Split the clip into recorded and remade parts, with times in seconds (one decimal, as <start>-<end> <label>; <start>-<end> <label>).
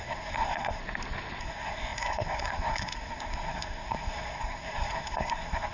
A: 0.0-0.8 remade; 0.8-1.4 recorded; 1.4-5.7 remade